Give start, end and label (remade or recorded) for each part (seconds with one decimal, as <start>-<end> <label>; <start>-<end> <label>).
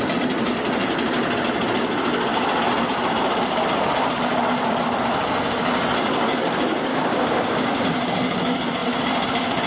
0.0-6.9 recorded; 6.9-7.8 remade; 7.8-9.7 recorded